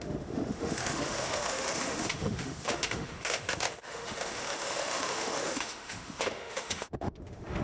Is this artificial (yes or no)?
yes